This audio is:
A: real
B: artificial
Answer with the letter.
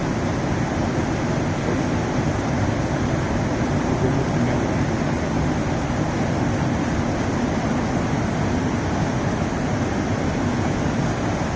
A